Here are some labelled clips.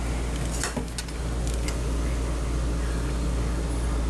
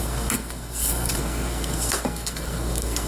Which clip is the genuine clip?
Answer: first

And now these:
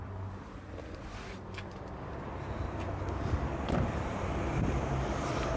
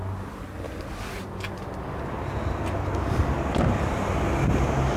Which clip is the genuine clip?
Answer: second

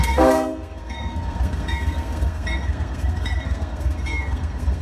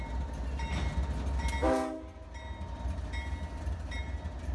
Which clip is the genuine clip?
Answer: second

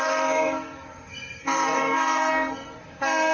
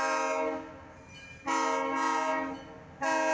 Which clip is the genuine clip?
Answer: second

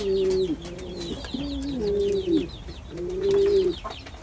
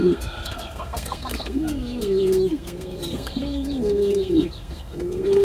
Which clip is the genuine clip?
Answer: first